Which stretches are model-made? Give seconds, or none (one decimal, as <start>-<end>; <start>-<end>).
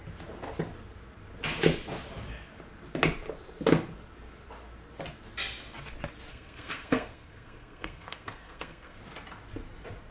6.3-9.0